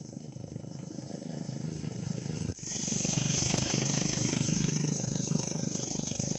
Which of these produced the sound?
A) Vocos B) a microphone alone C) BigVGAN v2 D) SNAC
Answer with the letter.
D